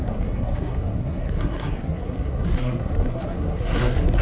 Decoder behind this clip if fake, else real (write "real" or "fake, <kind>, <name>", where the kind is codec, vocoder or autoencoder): fake, codec, SNAC